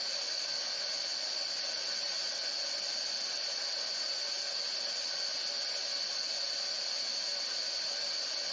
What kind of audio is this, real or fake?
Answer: real